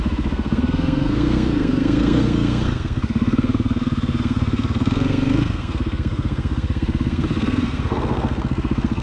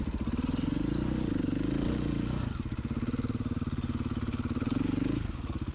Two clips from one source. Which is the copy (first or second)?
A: first